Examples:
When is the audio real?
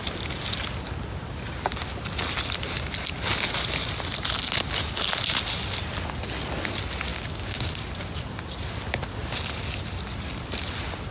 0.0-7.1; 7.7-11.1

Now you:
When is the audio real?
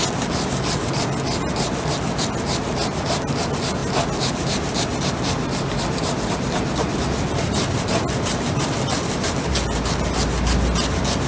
0.0-11.3